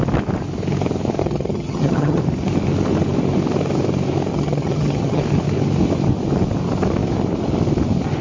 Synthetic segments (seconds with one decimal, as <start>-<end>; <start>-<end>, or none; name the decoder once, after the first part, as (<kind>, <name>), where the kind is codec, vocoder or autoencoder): 1.2-2.2 (vocoder, HiFi-GAN); 4.3-5.2